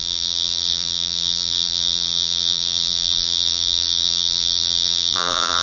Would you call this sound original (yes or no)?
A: no